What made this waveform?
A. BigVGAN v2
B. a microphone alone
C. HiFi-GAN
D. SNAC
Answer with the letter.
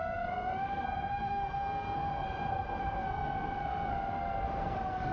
D